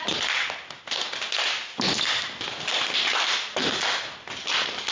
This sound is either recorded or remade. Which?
recorded